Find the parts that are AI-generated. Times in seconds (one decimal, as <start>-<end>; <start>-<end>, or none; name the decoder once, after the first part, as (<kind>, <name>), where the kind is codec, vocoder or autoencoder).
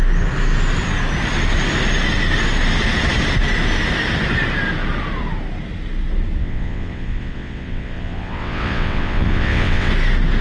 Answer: 6.4-9.9 (vocoder, WaveNeXt)